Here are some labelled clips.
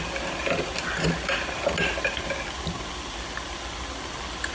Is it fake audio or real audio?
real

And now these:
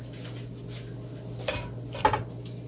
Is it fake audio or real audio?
real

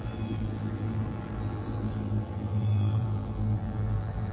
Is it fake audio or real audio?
fake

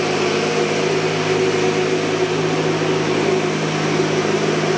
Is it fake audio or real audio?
real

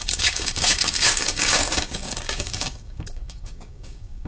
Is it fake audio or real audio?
fake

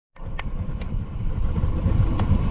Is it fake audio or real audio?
real